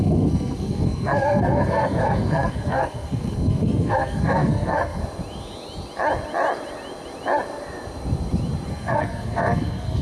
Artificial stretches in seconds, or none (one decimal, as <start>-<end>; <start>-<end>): 0.0-5.0; 8.7-10.0